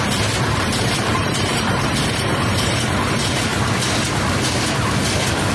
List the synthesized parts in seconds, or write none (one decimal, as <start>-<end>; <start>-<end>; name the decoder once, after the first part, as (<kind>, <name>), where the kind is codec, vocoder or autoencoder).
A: 0.0-3.5 (vocoder, BigVGAN v2)